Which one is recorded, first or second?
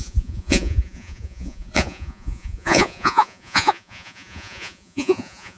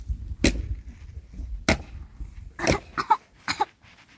second